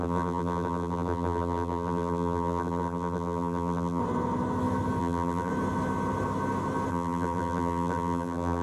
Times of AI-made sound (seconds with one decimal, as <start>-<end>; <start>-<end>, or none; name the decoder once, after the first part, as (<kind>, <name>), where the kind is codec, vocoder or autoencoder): 0.0-4.0 (vocoder, BigVGAN v2); 5.0-5.5; 6.9-8.6